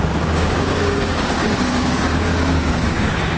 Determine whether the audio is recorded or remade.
remade